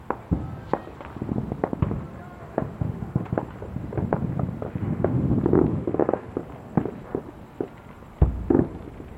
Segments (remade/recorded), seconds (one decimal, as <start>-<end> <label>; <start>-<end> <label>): 0.0-2.4 recorded; 2.4-3.3 remade; 3.3-4.8 recorded; 4.8-5.3 remade; 5.3-5.7 recorded; 5.7-6.3 remade; 6.3-9.2 recorded